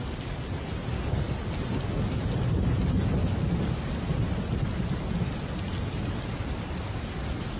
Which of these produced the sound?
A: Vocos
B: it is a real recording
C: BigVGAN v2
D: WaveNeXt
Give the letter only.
B